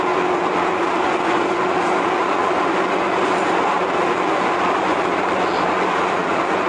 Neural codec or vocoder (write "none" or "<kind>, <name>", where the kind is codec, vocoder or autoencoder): vocoder, Vocos